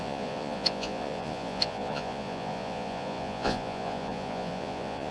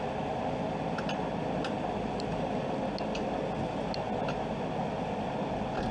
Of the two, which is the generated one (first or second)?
first